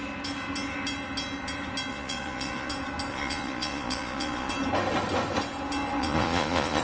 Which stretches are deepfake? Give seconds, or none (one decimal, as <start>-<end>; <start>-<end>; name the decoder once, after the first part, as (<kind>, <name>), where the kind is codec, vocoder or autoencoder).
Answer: 1.9-2.7 (vocoder, Vocos); 3.1-4.5; 6.0-6.8